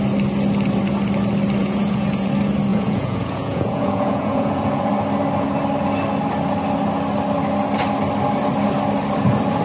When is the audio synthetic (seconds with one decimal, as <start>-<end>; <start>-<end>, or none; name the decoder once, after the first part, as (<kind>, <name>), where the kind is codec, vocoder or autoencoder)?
1.6-2.3 (vocoder, Vocos); 2.7-4.9